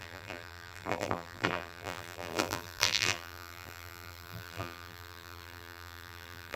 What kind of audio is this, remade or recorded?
remade